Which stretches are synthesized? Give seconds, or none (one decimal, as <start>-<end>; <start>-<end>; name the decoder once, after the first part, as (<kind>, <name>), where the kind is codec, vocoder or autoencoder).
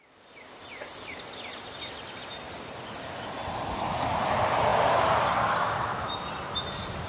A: none